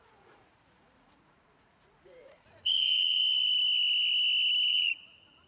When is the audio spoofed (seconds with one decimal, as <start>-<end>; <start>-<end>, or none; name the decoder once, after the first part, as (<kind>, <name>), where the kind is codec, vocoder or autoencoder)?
0.0-3.2 (vocoder, Vocos); 4.7-5.5